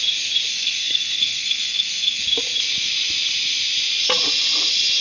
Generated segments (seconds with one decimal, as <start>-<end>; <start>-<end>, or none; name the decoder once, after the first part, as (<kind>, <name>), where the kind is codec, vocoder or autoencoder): 0.5-2.2 (codec, SNAC)